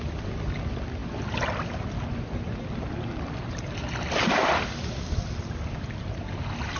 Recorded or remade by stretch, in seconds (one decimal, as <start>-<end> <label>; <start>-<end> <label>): 0.0-6.8 recorded